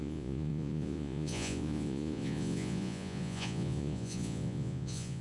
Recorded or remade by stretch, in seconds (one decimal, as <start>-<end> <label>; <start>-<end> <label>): 0.0-5.2 remade